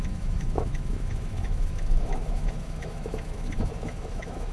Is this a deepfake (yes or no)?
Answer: yes